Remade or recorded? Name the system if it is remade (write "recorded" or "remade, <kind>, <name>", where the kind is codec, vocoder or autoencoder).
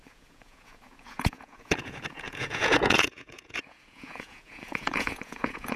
remade, vocoder, Vocos